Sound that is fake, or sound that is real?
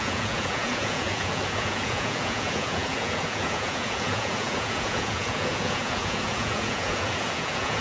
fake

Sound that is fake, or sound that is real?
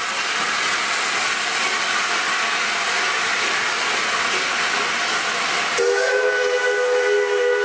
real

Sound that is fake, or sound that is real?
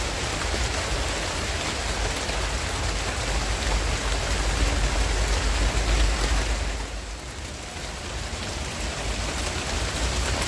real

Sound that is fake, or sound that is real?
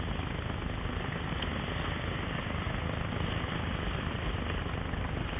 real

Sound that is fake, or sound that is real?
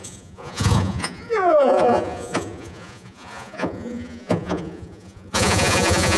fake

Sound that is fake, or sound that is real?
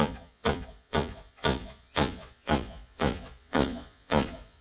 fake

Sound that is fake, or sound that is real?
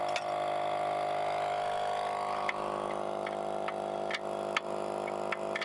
real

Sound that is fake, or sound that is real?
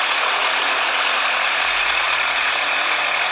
fake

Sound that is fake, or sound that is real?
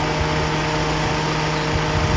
real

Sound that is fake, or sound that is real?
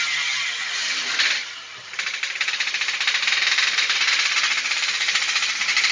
real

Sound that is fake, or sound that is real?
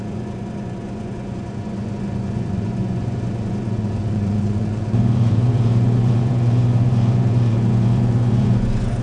fake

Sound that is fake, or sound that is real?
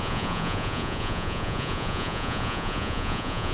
fake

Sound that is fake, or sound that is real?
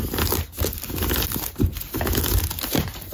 real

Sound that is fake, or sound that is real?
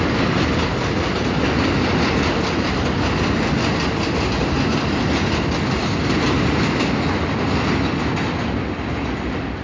real